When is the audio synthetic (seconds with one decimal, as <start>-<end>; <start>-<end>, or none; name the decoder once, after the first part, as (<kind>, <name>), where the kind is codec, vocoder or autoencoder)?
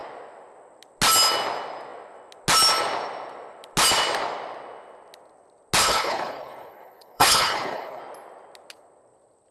5.8-8.0 (codec, HILCodec)